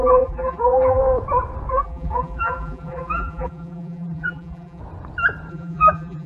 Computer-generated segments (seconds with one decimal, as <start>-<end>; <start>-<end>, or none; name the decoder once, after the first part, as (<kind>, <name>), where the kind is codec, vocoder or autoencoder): 0.0-1.0 (vocoder, BigVGAN v2); 1.7-4.8; 5.5-6.3